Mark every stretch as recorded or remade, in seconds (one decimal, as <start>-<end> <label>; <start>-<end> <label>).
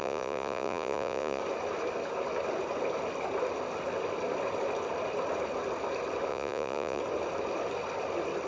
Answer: 0.0-1.4 remade; 1.4-6.3 recorded; 6.3-7.0 remade; 7.0-8.5 recorded